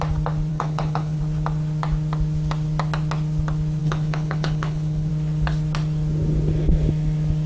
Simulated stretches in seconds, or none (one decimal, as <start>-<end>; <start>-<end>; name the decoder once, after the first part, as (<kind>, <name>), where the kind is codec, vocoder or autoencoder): 0.5-1.2 (codec, HILCodec); 3.8-5.1